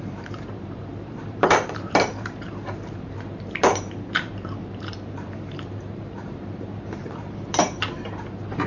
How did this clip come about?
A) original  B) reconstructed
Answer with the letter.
B